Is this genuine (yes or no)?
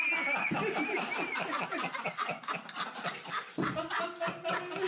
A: yes